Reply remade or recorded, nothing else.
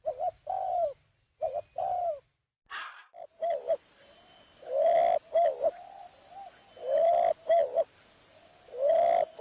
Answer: recorded